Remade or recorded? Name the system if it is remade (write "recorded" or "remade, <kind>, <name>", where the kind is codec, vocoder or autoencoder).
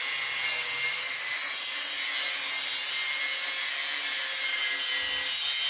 recorded